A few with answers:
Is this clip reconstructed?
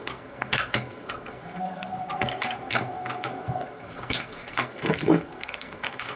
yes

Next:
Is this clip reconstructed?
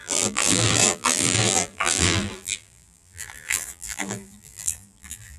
yes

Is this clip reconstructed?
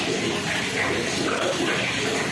no